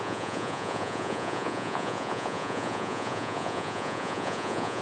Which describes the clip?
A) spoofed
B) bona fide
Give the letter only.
A